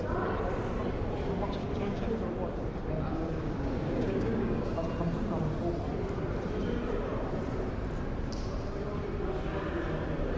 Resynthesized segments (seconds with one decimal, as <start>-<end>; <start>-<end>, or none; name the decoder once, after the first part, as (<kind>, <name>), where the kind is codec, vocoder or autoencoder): 1.6-2.2 (codec, DAC); 3.1-4.7